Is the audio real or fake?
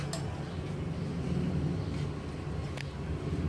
real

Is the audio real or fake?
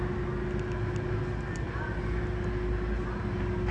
real